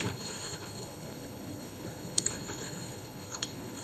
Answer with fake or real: fake